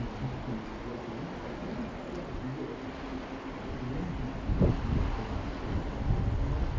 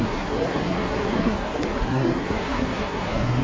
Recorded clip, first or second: first